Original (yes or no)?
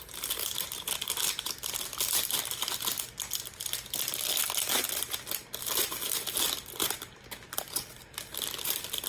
yes